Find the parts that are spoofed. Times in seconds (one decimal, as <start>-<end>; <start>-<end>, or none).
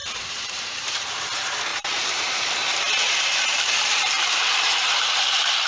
0.0-5.7